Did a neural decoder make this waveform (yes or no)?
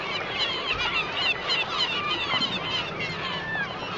no